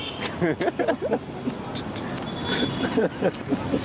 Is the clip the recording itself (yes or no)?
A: yes